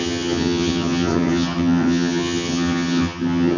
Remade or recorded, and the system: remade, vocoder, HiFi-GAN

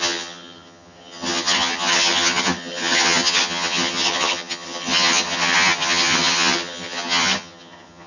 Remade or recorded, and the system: remade, vocoder, HiFi-GAN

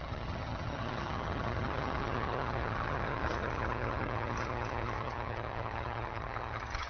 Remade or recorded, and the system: remade, vocoder, HiFi-GAN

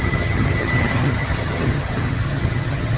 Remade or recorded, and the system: remade, vocoder, HiFi-GAN